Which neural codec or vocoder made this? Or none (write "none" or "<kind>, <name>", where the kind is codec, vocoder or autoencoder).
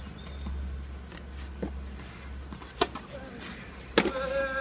none